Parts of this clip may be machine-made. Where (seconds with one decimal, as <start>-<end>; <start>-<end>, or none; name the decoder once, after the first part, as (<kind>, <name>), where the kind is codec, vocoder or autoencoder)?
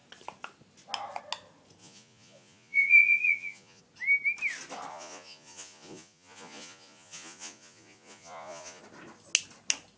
1.8-3.8 (vocoder, Vocos); 4.9-8.8